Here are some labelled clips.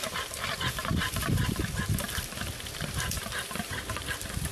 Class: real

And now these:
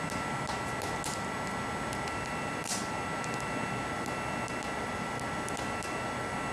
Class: real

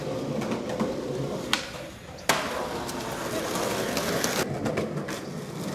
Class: real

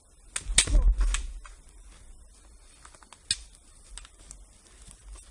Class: real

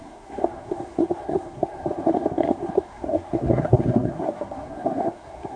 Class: fake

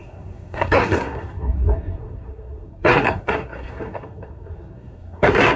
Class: fake